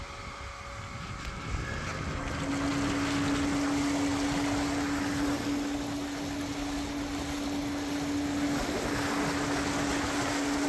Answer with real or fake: real